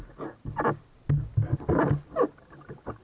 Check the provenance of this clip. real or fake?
real